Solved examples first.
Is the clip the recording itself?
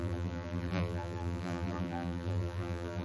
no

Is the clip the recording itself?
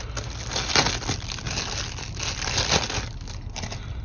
yes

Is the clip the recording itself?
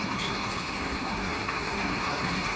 no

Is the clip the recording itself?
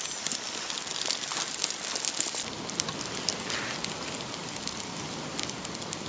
yes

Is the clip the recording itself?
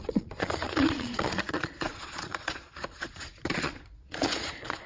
no